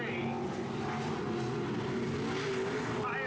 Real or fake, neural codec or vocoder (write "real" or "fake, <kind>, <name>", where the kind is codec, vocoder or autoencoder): real